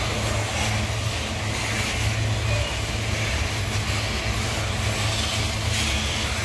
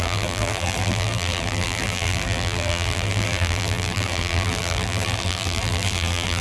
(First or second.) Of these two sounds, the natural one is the first